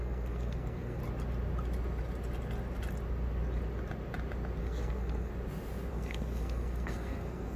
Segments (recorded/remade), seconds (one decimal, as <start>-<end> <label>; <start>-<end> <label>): 0.0-1.0 remade; 1.0-4.6 recorded; 4.6-5.3 remade; 5.3-5.9 recorded; 5.9-7.6 remade